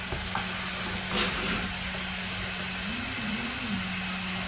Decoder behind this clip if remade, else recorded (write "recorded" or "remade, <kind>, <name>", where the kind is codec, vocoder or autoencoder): recorded